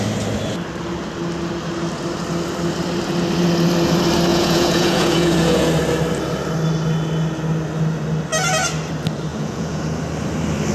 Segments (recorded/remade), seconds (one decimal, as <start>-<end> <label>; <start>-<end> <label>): 0.0-4.3 recorded; 4.3-5.7 remade; 5.7-9.3 recorded; 9.3-9.8 remade; 9.8-10.7 recorded